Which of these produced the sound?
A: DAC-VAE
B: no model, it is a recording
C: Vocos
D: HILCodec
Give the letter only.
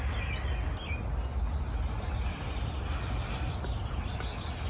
B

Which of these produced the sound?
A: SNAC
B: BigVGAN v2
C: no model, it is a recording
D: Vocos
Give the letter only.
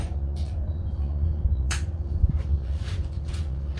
D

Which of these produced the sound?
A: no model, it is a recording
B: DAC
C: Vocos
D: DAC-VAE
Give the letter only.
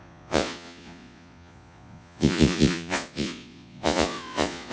C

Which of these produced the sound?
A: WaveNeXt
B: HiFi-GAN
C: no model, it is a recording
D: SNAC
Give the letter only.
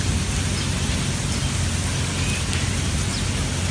C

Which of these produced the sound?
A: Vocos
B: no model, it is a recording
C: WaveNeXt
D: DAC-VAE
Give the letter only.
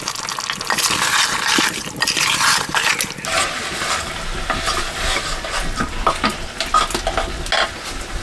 B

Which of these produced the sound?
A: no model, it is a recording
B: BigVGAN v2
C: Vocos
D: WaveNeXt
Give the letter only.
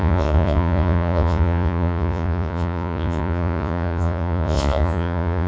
C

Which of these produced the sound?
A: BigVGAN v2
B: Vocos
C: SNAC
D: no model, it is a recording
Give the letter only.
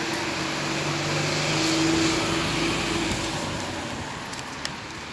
D